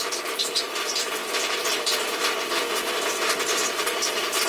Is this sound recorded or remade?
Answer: remade